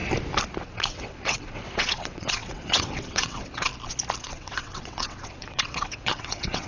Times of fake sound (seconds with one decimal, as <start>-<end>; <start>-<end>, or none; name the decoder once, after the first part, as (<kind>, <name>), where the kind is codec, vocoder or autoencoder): 0.6-3.7 (vocoder, WaveNeXt); 4.2-6.7